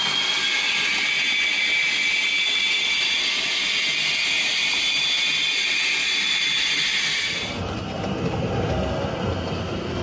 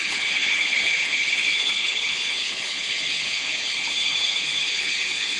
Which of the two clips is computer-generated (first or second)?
second